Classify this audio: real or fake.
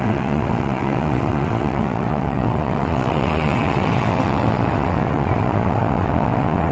fake